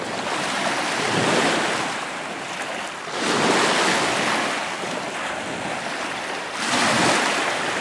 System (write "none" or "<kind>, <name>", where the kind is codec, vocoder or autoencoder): none